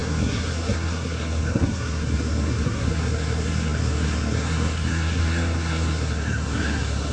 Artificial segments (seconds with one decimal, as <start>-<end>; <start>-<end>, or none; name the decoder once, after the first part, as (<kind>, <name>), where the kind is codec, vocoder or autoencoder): 0.0-7.1 (codec, SNAC)